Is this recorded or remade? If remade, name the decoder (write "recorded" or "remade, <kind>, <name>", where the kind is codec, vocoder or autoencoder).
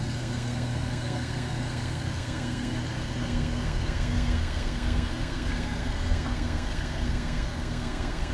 remade, codec, SNAC